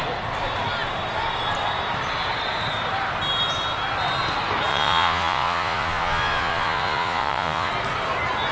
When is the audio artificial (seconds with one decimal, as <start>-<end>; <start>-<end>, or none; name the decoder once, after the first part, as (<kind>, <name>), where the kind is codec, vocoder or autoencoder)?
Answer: 4.7-7.7 (vocoder, Vocos)